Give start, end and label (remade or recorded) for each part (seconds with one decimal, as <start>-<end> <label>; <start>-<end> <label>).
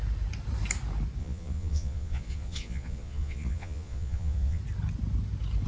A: 0.0-1.2 recorded; 1.2-4.6 remade; 4.6-5.7 recorded